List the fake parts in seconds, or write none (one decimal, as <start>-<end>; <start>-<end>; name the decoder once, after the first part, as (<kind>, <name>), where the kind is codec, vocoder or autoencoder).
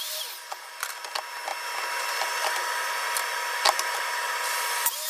none